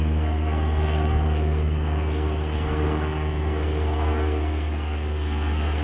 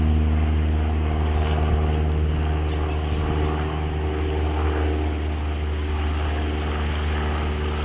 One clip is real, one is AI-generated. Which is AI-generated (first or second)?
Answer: first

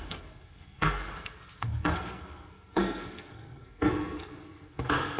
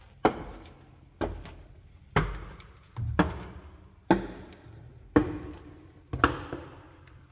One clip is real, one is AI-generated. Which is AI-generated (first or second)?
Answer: first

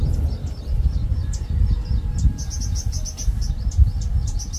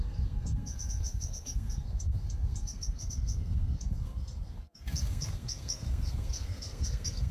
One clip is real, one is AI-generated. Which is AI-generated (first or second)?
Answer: second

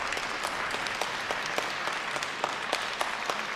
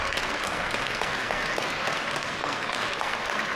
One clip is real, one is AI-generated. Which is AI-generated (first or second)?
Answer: second